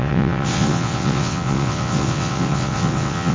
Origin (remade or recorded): remade